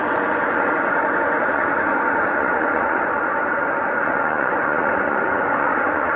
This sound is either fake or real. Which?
fake